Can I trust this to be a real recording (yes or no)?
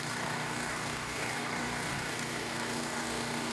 no